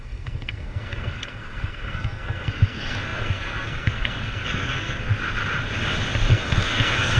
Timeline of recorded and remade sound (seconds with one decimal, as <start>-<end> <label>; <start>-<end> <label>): 0.0-5.1 remade; 5.1-6.3 recorded; 6.3-7.2 remade